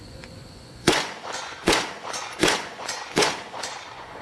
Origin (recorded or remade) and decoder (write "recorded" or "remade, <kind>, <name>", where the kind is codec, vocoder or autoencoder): remade, vocoder, Vocos